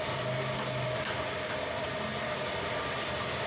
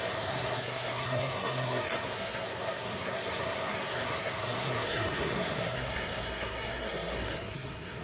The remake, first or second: second